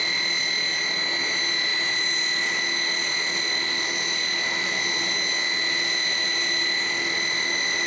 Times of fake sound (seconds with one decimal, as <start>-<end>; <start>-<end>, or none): none